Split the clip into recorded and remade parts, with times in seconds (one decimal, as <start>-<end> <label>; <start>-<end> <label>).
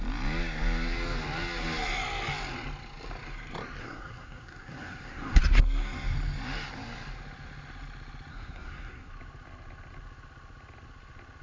0.0-3.8 recorded; 3.8-5.4 remade; 5.4-8.3 recorded; 8.3-9.1 remade; 9.1-11.4 recorded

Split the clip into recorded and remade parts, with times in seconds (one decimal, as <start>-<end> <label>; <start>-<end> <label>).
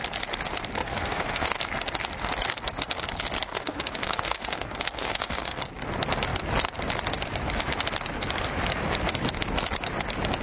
0.0-0.8 recorded; 0.8-1.6 remade; 1.6-3.5 recorded; 3.5-5.6 remade; 5.6-10.4 recorded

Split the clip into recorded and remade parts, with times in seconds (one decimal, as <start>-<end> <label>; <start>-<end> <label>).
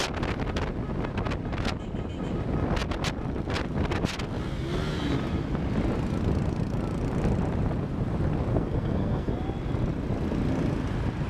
0.0-8.5 recorded; 8.5-9.3 remade; 9.3-11.3 recorded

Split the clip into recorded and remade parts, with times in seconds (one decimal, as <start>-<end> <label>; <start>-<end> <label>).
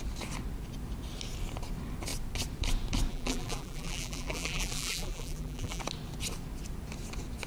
0.0-3.1 recorded; 3.1-5.8 remade; 5.8-7.5 recorded